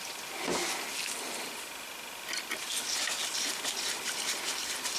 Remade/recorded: recorded